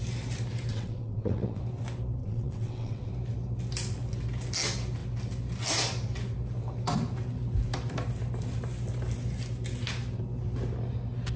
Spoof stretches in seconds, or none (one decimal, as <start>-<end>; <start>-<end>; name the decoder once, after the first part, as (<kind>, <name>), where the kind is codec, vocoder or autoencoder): 0.7-1.6 (vocoder, WaveNeXt); 2.2-3.1